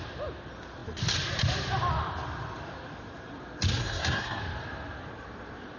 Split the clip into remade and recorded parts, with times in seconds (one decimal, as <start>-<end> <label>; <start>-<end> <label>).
0.0-3.8 recorded; 3.8-4.4 remade; 4.4-5.8 recorded